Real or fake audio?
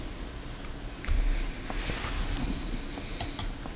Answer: real